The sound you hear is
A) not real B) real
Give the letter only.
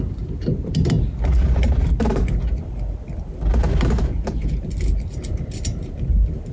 B